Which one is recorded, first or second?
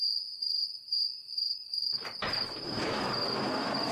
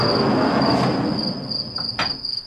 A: second